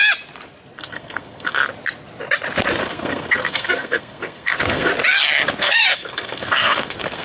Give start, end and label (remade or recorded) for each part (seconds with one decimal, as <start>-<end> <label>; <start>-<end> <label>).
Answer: 0.0-0.8 recorded; 0.8-1.6 remade; 1.6-2.8 recorded; 2.8-4.9 remade; 4.9-5.6 recorded; 5.6-7.2 remade